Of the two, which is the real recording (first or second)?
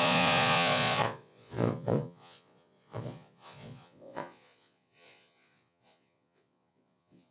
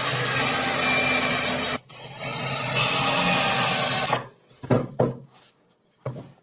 second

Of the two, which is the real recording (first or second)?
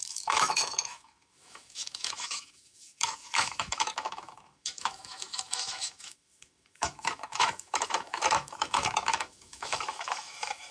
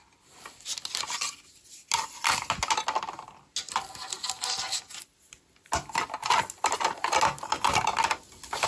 second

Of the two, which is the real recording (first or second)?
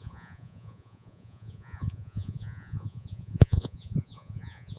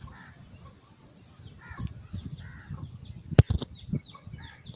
second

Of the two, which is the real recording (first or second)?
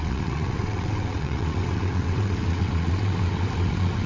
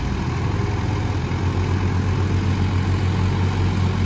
second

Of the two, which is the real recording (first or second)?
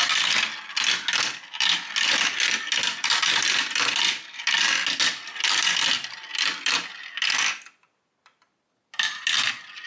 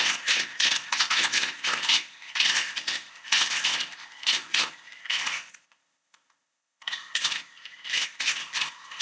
first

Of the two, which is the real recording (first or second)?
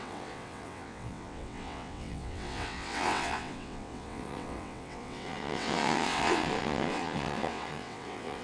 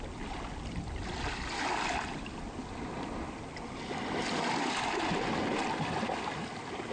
second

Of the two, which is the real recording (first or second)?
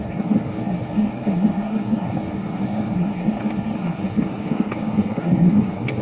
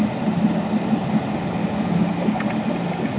second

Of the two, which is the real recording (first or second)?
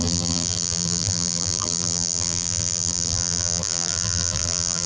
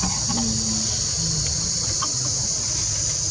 second